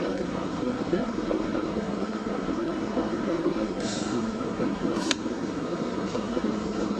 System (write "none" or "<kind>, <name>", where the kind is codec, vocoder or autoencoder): codec, SNAC